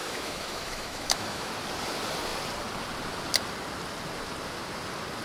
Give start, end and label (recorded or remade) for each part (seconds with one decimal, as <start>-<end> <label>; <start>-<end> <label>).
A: 0.0-1.5 remade; 1.5-5.2 recorded